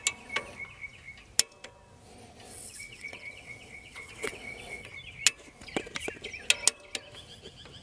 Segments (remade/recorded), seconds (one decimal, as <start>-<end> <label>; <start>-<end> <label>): 0.0-2.5 recorded; 2.5-4.9 remade; 4.9-7.8 recorded